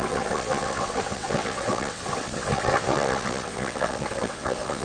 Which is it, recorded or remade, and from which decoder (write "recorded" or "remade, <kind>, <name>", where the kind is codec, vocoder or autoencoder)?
remade, vocoder, WaveNeXt